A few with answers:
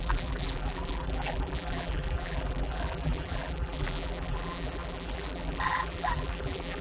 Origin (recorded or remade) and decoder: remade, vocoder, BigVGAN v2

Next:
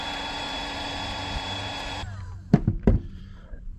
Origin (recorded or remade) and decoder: remade, vocoder, BigVGAN v2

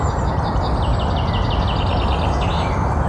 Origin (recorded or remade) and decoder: recorded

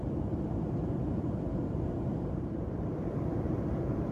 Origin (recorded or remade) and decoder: remade, vocoder, BigVGAN v2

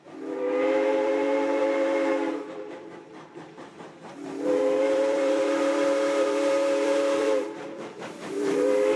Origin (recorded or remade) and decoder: remade, vocoder, BigVGAN v2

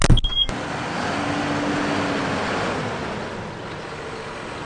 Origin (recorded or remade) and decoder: recorded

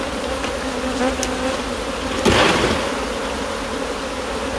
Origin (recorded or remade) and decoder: recorded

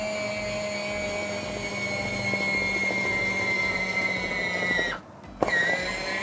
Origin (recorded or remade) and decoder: recorded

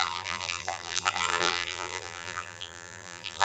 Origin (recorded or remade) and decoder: remade, vocoder, BigVGAN v2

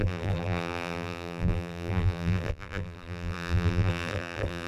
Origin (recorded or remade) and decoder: remade, vocoder, BigVGAN v2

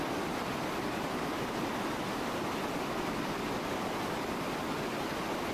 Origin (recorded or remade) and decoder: recorded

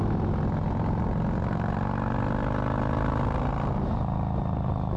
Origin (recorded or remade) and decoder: recorded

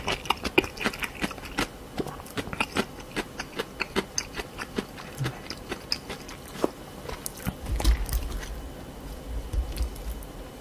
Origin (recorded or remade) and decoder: recorded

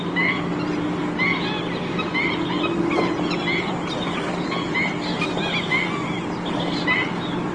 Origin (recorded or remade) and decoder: recorded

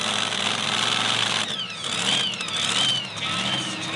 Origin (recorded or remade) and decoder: recorded